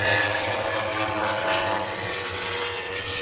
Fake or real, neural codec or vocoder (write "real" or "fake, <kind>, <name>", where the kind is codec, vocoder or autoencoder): fake, vocoder, WaveNeXt